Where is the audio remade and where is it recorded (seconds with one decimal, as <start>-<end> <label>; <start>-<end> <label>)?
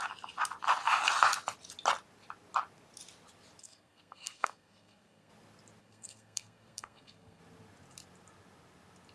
0.0-3.6 recorded; 3.6-5.3 remade; 5.3-5.8 recorded; 5.8-7.4 remade; 7.4-9.1 recorded